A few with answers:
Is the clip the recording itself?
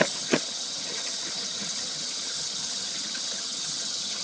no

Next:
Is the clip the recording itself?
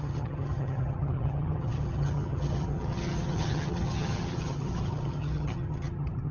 no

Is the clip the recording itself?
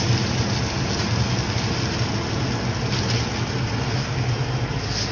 yes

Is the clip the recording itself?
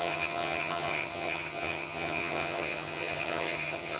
no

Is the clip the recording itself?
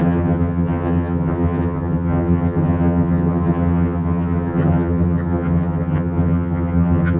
no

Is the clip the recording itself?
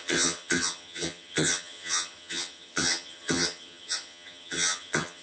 no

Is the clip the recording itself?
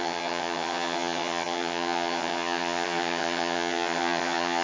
no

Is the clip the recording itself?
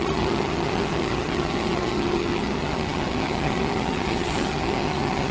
no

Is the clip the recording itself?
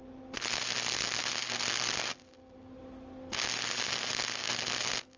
yes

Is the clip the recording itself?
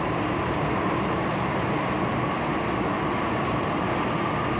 yes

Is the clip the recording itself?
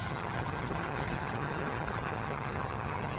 no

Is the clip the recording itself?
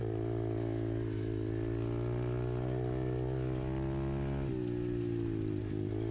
yes